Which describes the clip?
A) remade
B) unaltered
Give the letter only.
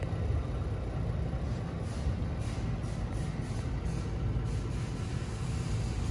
B